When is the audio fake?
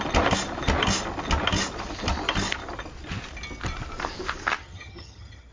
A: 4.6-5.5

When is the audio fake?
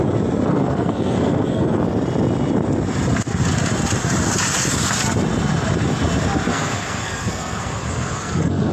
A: 0.5-1.8; 6.5-8.7